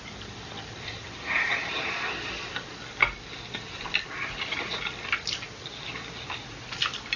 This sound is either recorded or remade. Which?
recorded